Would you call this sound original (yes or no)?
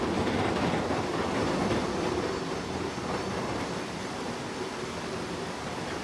yes